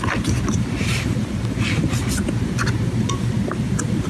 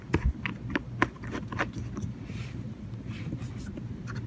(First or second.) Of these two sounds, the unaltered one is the second